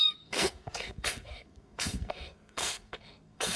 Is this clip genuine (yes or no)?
no